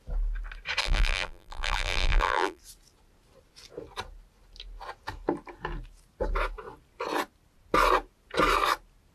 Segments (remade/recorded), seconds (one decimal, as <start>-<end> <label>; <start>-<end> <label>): 0.0-0.8 recorded; 0.8-2.6 remade; 2.6-9.1 recorded